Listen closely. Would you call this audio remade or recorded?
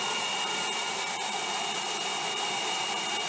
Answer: remade